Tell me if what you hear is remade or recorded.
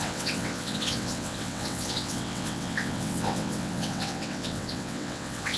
remade